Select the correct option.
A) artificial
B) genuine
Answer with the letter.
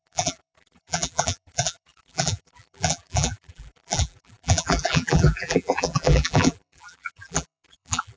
A